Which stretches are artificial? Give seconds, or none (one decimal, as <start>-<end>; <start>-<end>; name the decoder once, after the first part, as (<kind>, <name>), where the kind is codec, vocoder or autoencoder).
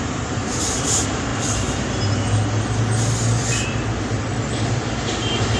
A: 0.0-1.3 (vocoder, BigVGAN v2); 4.7-5.6